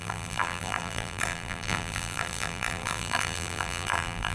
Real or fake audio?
fake